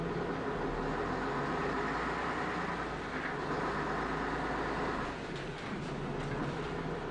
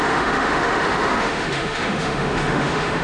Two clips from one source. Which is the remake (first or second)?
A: second